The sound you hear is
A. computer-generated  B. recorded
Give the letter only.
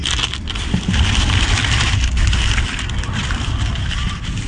B